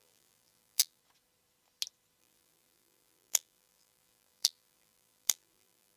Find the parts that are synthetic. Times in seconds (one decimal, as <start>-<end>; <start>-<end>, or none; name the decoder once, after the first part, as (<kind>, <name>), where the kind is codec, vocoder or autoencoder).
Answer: 0.0-1.0 (vocoder, BigVGAN v2); 2.2-6.0